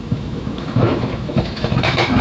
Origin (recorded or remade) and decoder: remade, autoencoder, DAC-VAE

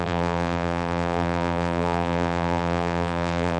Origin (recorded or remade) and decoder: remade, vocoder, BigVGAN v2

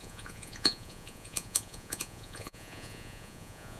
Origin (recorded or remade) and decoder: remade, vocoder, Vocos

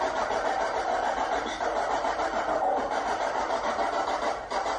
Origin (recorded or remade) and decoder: recorded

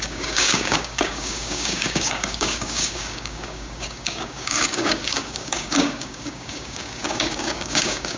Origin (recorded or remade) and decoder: remade, codec, DAC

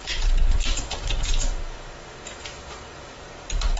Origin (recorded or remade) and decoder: remade, vocoder, BigVGAN v2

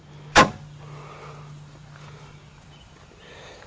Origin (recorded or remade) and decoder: recorded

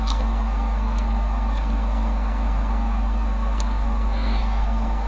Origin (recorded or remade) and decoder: remade, codec, SNAC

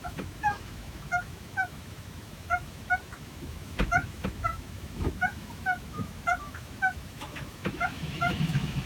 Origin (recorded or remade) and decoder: remade, autoencoder, DAC-VAE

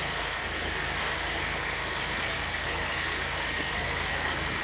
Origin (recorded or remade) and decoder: remade, codec, SNAC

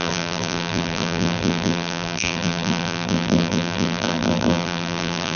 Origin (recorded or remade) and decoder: remade, vocoder, BigVGAN v2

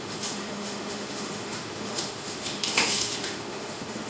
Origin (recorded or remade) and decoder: remade, autoencoder, DAC-VAE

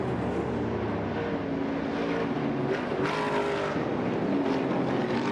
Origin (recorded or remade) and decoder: recorded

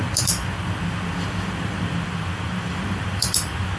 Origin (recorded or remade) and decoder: remade, vocoder, BigVGAN v2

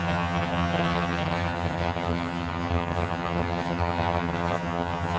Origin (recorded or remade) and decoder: remade, vocoder, HiFi-GAN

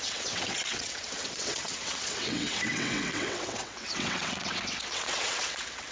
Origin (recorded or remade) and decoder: remade, vocoder, WaveNeXt